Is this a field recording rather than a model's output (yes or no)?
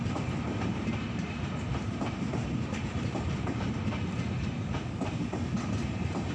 no